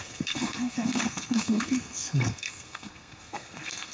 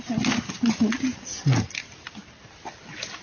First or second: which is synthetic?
first